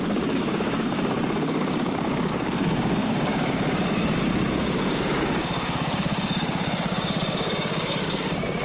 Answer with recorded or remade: remade